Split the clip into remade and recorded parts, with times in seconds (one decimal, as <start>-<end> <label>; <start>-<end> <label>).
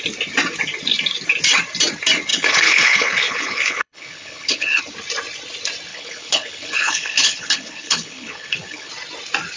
0.0-2.3 recorded; 2.3-4.8 remade; 4.8-5.9 recorded; 5.9-8.9 remade; 8.9-9.6 recorded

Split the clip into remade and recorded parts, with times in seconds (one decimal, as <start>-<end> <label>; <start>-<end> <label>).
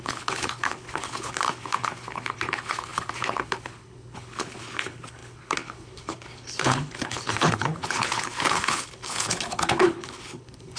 0.0-10.8 remade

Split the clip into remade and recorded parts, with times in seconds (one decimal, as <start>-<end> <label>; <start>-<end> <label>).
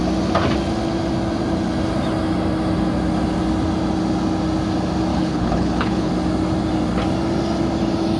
0.0-5.1 recorded; 5.1-6.1 remade; 6.1-8.2 recorded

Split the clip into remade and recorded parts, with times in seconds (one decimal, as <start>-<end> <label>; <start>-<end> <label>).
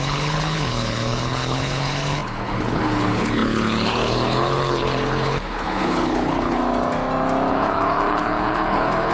0.0-6.6 remade; 6.6-7.5 recorded; 7.5-9.1 remade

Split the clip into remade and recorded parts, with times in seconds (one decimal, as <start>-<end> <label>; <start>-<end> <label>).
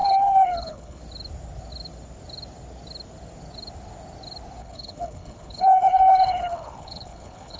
0.0-1.0 remade; 1.0-4.6 recorded; 4.6-7.6 remade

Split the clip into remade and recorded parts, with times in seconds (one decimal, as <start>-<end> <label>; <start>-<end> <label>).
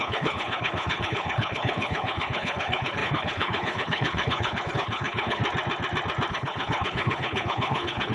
0.0-5.4 remade; 5.4-6.3 recorded; 6.3-8.1 remade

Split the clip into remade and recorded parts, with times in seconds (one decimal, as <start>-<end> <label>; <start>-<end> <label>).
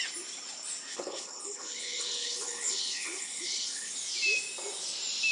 0.0-0.9 recorded; 0.9-3.9 remade; 3.9-5.3 recorded